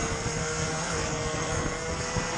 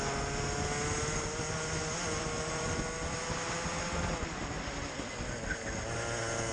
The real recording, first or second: second